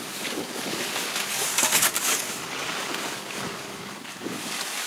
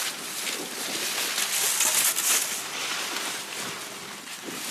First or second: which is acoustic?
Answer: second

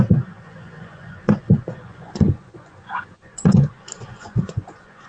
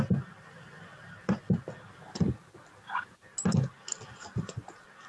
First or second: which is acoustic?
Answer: second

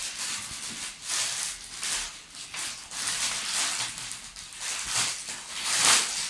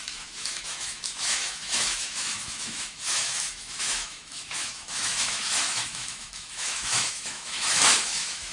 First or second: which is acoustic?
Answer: first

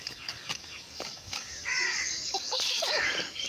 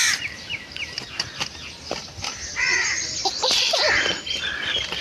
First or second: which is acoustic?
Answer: second